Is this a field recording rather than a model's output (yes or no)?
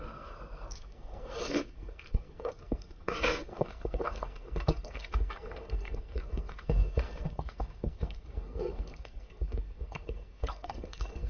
no